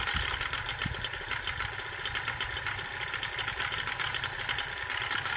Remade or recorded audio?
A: recorded